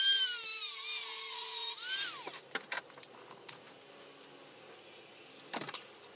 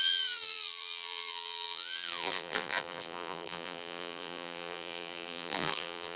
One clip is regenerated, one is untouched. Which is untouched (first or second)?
first